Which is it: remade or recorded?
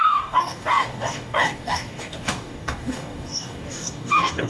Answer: remade